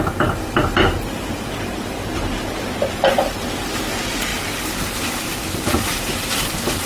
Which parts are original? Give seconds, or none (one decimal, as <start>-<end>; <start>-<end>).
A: 0.0-4.3; 6.0-6.9